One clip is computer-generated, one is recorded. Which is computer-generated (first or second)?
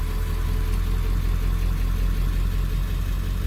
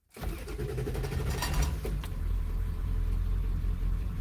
second